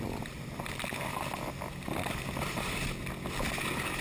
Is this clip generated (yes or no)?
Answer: no